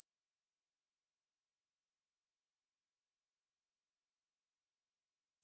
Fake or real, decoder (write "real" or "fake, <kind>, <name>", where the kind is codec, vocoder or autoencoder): fake, autoencoder, DAC-VAE